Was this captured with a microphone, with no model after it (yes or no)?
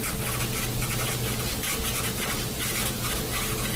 yes